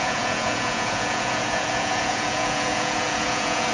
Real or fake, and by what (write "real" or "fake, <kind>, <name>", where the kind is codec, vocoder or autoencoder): fake, vocoder, Vocos